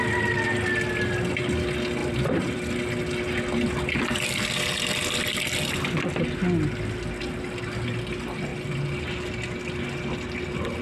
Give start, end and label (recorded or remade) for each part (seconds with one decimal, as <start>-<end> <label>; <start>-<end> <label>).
0.0-2.0 recorded; 2.0-2.8 remade; 2.8-8.5 recorded; 8.5-9.3 remade; 9.3-10.8 recorded